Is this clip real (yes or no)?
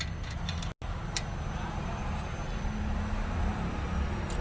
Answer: yes